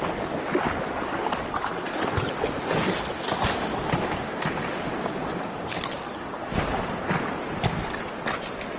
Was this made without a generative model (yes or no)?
yes